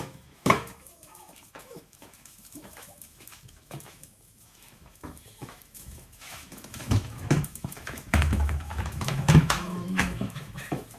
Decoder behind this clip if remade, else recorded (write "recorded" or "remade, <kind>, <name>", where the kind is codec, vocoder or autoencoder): remade, autoencoder, DAC-VAE